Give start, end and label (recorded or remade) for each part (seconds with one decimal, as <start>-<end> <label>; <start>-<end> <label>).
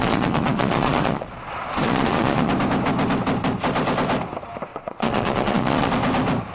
0.0-2.5 remade; 2.5-4.7 recorded; 4.7-5.9 remade; 5.9-6.5 recorded